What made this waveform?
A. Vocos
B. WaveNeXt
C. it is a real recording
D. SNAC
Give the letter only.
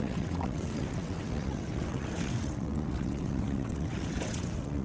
B